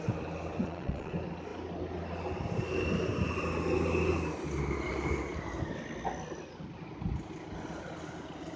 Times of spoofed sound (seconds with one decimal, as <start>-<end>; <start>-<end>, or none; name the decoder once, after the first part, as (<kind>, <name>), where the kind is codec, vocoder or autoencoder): 0.6-1.1 (vocoder, WaveNeXt)

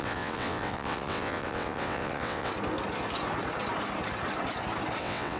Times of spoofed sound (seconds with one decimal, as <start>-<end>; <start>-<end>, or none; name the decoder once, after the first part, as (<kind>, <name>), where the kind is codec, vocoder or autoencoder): 0.0-2.5 (vocoder, WaveNeXt); 5.0-5.4

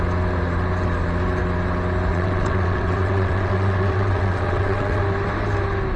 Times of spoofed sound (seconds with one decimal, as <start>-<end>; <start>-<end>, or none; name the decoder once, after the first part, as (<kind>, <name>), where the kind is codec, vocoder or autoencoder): 2.1-5.0 (vocoder, WaveNeXt)

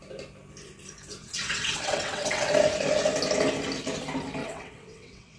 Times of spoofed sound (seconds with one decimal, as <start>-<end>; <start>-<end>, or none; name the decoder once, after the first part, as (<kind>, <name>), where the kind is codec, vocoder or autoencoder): 1.2-2.5 (vocoder, WaveNeXt); 4.4-5.4

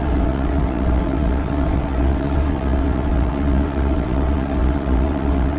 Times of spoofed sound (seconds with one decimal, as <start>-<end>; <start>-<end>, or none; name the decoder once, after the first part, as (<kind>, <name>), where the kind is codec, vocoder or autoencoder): 0.0-5.6 (vocoder, WaveNeXt)

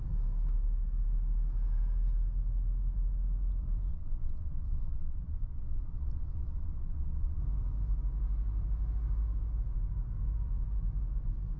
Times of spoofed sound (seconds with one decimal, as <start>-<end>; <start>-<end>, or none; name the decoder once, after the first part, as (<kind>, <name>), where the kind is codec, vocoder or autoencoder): 3.9-7.4 (vocoder, WaveNeXt)

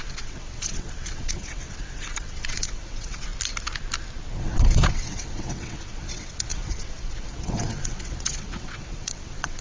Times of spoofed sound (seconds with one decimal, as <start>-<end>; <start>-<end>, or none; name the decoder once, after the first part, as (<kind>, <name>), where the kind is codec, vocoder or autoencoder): 0.0-3.3 (vocoder, WaveNeXt); 4.4-9.6

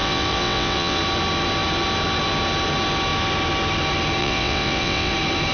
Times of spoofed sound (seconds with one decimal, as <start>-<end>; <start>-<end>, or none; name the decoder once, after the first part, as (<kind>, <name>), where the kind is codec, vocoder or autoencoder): 0.0-1.0 (vocoder, WaveNeXt); 4.2-5.1